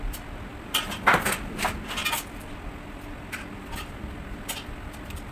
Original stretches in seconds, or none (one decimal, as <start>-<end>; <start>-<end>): 0.0-0.5; 1.6-2.0